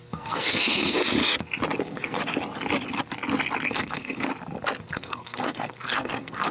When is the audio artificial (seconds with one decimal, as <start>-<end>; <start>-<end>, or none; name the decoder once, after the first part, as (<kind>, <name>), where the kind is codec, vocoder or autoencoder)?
0.0-1.0 (codec, SNAC); 1.8-2.2; 3.7-4.3; 4.9-6.5